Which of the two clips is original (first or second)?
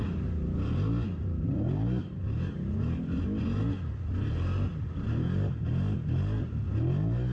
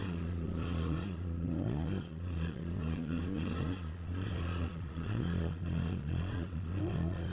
first